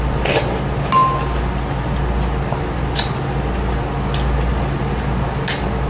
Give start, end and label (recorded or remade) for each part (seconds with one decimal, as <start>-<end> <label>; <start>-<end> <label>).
0.0-5.9 recorded

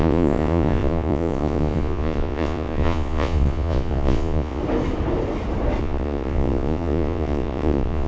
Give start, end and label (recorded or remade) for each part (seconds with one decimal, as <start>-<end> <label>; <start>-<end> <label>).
0.0-4.6 remade; 4.6-5.8 recorded; 5.8-8.1 remade

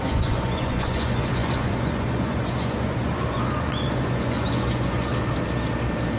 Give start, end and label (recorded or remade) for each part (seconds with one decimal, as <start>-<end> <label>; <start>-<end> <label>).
0.0-5.1 remade; 5.1-6.2 recorded